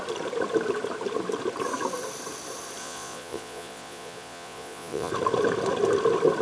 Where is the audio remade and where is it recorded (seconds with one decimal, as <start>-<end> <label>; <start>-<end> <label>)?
0.0-2.8 recorded; 2.8-5.1 remade; 5.1-6.4 recorded

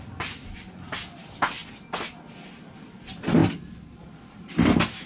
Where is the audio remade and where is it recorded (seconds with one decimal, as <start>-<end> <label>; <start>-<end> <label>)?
0.0-5.1 recorded

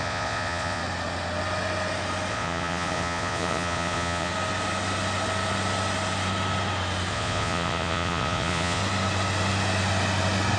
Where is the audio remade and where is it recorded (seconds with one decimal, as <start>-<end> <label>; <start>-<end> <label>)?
0.0-0.8 remade; 0.8-2.3 recorded; 2.3-4.3 remade; 4.3-7.1 recorded; 7.1-8.8 remade; 8.8-10.6 recorded